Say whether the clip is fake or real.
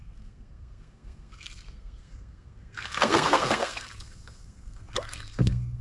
fake